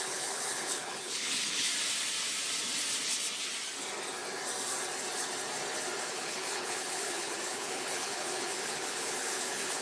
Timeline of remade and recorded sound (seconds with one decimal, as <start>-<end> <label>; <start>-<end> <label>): 0.0-1.7 remade; 1.7-6.0 recorded; 6.0-9.8 remade